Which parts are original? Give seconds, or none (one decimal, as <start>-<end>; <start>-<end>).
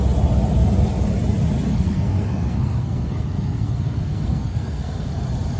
0.0-1.7; 5.1-5.6